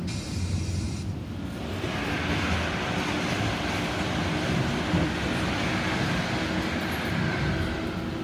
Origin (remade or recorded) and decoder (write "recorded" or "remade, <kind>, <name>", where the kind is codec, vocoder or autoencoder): recorded